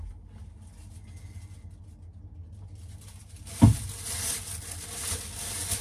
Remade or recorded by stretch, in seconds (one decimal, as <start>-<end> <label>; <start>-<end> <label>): 0.0-5.8 recorded